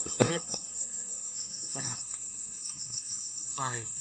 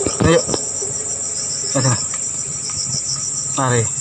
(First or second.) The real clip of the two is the second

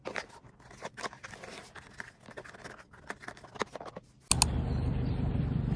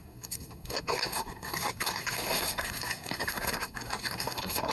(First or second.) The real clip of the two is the first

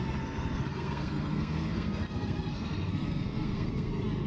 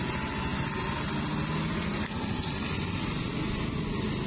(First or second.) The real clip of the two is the second